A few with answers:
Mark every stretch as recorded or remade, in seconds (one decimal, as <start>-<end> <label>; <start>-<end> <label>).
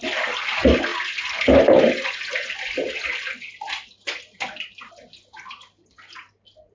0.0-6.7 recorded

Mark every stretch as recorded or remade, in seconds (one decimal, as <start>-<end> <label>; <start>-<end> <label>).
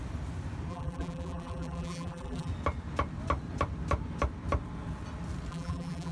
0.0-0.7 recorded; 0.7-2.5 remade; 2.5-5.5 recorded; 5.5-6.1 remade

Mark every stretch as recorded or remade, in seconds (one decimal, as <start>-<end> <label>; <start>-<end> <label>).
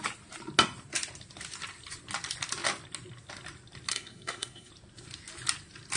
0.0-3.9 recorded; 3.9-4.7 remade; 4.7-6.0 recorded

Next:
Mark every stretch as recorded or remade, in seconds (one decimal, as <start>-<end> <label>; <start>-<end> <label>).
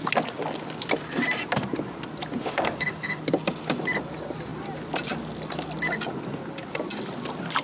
0.0-2.4 recorded; 2.4-3.2 remade; 3.2-7.6 recorded